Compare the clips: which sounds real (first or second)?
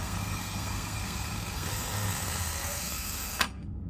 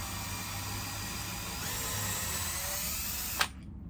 second